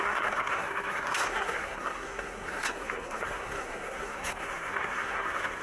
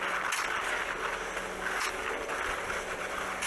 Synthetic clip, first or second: first